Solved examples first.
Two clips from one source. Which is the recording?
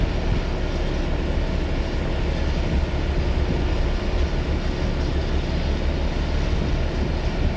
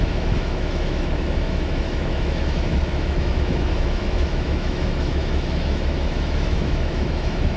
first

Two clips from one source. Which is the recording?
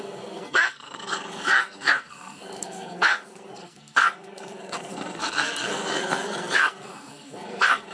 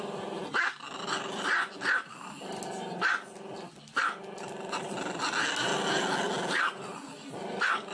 second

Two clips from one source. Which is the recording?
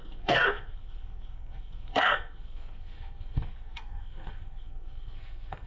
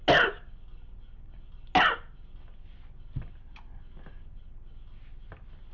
second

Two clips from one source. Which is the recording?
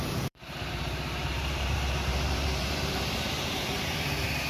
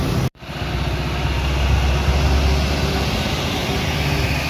second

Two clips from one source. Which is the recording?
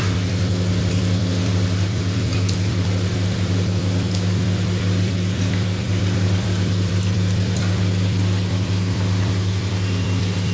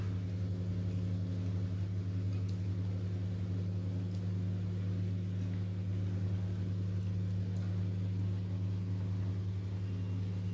second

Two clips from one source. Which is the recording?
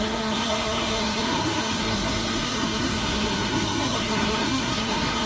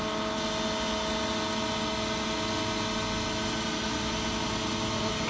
second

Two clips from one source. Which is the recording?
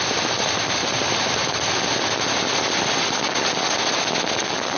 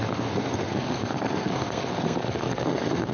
first